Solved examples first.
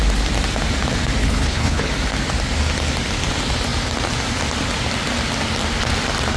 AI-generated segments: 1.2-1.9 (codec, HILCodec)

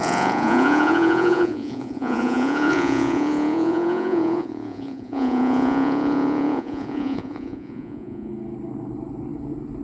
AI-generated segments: 0.0-8.3 (vocoder, Vocos)

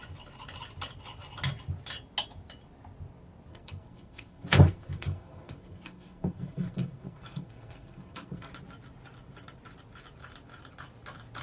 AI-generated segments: 3.5-8.5 (codec, SNAC)

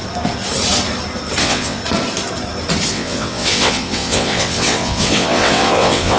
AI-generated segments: 1.4-1.8 (vocoder, WaveNeXt); 2.9-6.2

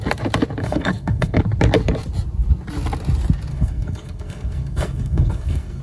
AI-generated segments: 0.6-1.4 (codec, SNAC); 3.5-5.8